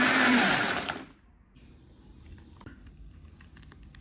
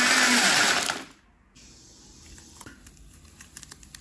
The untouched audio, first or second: second